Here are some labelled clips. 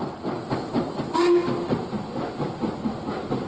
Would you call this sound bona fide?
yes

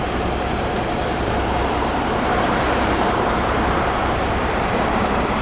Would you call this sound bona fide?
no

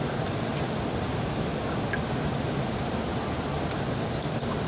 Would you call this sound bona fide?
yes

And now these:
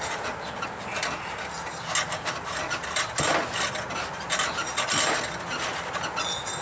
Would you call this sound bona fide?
yes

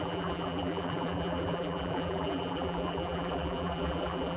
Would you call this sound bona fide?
no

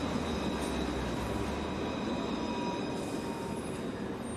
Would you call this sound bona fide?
yes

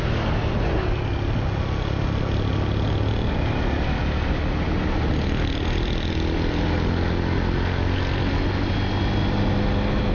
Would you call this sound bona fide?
yes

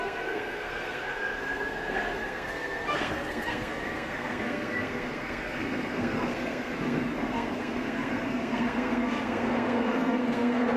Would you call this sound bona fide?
no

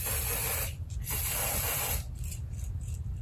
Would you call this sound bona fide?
no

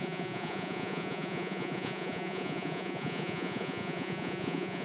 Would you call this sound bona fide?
no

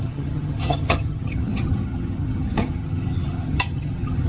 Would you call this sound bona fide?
no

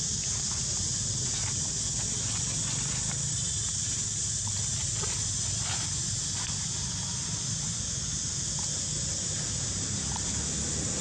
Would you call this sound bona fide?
yes